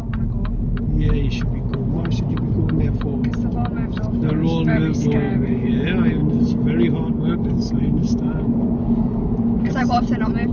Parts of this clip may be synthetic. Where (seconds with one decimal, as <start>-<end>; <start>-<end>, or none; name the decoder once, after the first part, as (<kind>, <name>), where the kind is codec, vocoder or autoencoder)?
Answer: 4.4-5.7 (autoencoder, DAC-VAE); 8.0-9.7